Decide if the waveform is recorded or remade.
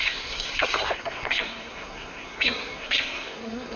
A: remade